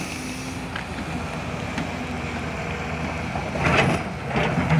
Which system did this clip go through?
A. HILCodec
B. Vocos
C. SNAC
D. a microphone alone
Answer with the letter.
D